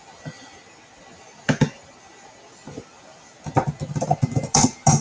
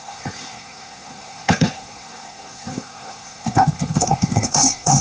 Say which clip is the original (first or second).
first